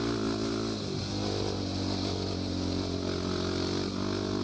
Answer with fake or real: real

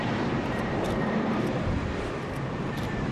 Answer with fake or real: fake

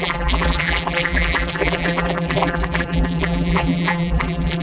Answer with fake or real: fake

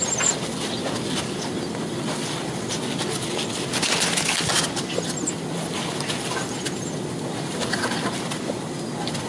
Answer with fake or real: real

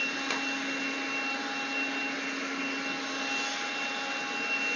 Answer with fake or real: real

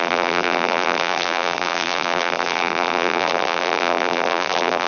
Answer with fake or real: fake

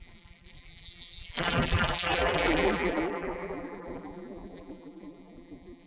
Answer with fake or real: fake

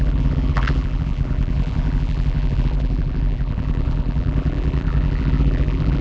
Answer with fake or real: fake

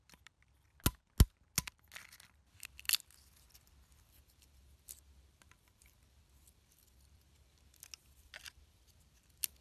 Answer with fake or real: real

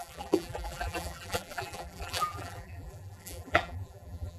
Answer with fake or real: fake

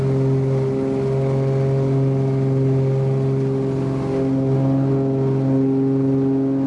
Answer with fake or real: real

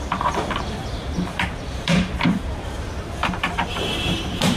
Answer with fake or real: fake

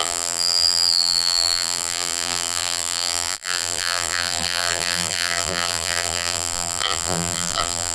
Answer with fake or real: fake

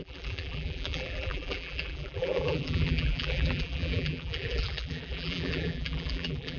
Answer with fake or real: fake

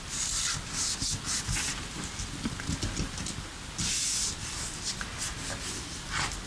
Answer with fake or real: real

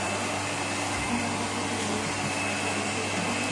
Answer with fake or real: fake